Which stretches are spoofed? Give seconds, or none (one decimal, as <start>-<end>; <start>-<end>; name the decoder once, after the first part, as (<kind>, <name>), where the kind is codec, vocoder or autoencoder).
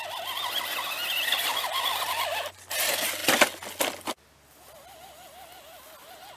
1.5-2.7 (vocoder, BigVGAN v2)